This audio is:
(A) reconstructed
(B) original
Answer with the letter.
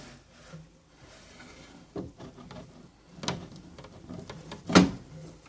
B